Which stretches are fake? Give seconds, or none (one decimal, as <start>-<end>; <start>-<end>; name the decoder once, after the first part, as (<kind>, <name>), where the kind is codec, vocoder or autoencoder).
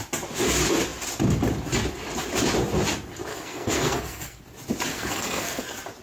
3.3-4.4 (codec, SNAC); 4.9-5.6